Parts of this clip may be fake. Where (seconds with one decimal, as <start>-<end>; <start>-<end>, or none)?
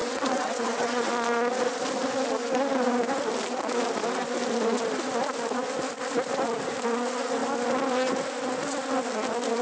0.0-1.1